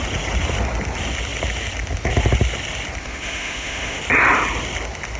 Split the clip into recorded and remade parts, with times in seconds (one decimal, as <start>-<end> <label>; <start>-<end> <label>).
0.0-3.0 recorded; 3.0-4.0 remade; 4.0-5.2 recorded